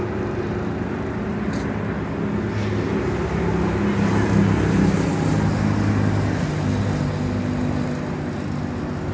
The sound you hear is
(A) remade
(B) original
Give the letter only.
B